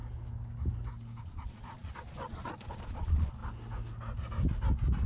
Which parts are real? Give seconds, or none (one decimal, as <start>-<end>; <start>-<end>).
0.0-1.2; 3.4-5.1